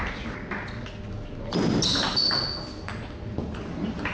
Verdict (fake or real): real